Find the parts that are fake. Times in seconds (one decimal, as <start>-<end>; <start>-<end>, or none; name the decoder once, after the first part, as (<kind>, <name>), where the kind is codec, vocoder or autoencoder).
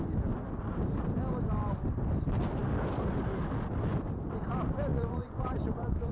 4.9-6.1 (vocoder, Vocos)